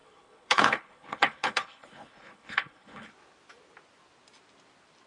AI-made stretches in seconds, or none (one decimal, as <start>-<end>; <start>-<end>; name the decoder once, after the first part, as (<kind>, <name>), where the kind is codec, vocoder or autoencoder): 0.0-3.1 (codec, HILCodec)